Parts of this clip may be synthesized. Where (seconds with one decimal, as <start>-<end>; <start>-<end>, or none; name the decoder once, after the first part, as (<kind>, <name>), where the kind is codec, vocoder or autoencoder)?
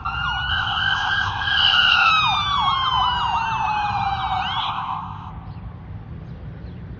0.5-2.1 (codec, ZipCodec); 4.6-5.3